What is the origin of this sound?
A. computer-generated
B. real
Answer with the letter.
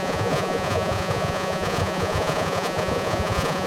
A